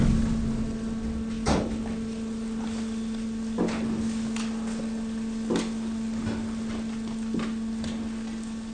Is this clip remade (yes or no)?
no